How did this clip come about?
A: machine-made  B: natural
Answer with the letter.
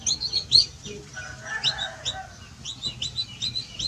B